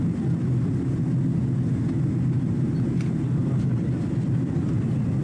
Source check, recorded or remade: recorded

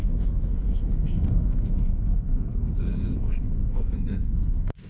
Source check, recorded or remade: remade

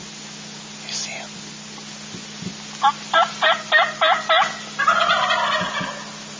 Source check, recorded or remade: recorded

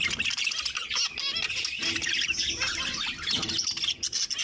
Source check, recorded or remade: recorded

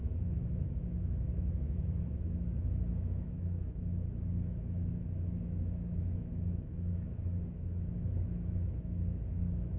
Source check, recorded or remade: remade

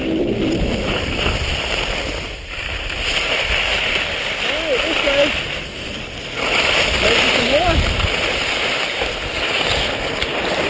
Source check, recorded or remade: recorded